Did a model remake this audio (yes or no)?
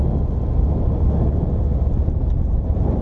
no